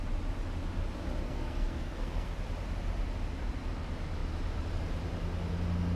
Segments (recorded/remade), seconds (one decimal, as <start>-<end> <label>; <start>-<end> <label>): 0.0-1.2 recorded; 1.2-2.3 remade; 2.3-6.0 recorded